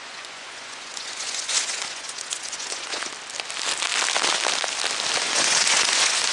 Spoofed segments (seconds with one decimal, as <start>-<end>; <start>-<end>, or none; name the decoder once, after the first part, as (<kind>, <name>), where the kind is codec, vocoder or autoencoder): 0.0-3.1 (vocoder, Vocos); 5.2-6.3